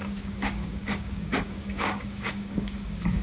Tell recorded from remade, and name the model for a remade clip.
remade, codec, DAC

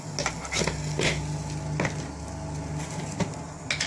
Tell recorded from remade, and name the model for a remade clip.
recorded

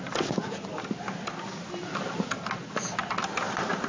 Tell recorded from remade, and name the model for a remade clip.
recorded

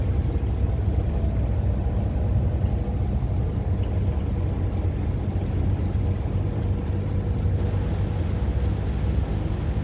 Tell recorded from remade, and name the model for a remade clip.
recorded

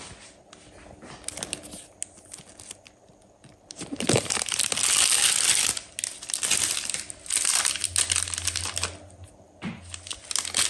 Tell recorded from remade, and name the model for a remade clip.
recorded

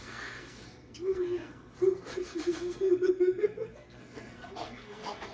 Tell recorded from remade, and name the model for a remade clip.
remade, codec, SNAC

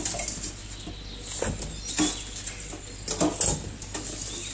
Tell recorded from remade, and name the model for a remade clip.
recorded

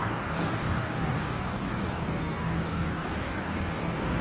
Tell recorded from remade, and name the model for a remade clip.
remade, codec, DAC